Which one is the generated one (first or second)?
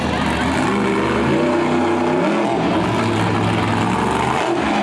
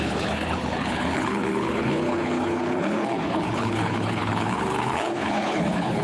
second